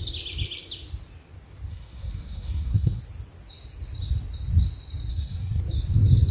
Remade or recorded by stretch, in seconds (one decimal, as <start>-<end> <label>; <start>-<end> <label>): 0.0-1.7 recorded; 1.7-3.0 remade; 3.0-5.1 recorded; 5.1-5.6 remade; 5.6-6.3 recorded